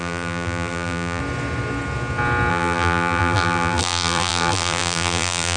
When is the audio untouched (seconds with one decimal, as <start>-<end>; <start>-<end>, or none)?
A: 1.2-2.5